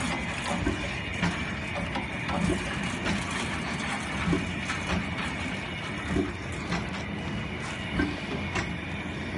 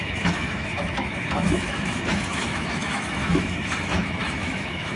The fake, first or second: second